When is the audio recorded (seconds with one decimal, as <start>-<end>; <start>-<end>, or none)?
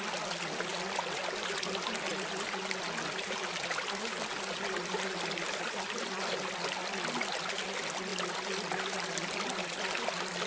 0.0-10.5